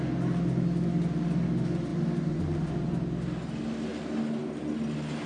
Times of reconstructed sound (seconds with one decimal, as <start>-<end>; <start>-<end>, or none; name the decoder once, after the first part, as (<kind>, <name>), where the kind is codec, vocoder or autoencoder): none